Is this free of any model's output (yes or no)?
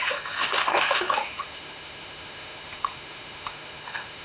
no